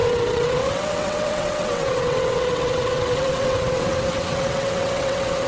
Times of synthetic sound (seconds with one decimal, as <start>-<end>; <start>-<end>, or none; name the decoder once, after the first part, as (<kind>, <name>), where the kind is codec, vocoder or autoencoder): 0.0-5.5 (vocoder, WaveNeXt)